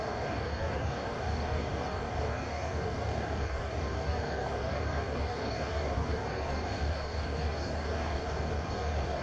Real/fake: fake